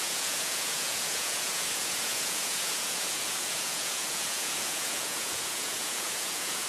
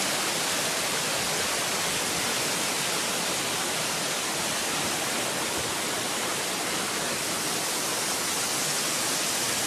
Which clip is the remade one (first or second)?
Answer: first